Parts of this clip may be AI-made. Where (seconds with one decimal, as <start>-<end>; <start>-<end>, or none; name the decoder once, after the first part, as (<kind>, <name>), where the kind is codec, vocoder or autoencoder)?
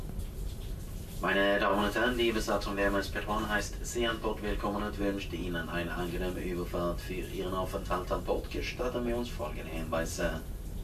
1.7-3.6 (autoencoder, DAC-VAE); 4.1-5.0